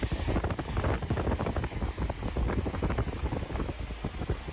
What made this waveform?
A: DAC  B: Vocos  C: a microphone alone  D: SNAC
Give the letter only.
C